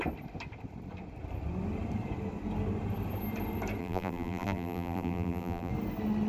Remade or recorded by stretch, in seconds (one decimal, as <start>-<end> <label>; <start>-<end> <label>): 0.0-3.8 recorded; 3.8-5.7 remade; 5.7-6.3 recorded